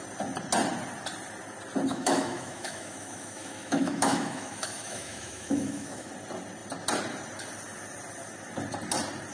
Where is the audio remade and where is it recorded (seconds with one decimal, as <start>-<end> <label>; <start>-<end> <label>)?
0.0-1.9 recorded; 1.9-6.1 remade; 6.1-9.3 recorded